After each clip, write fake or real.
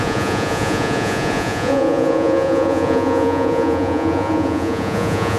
fake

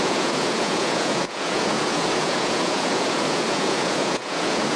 fake